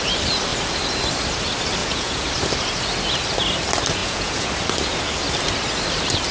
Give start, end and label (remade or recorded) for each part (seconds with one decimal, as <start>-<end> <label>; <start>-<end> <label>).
0.0-1.8 recorded; 1.8-2.3 remade; 2.3-4.0 recorded; 4.0-4.5 remade; 4.5-6.3 recorded